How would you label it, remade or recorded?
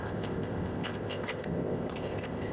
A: remade